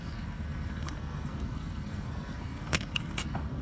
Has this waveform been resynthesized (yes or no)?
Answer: yes